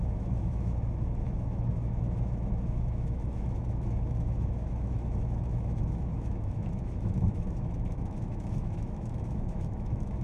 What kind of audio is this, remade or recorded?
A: remade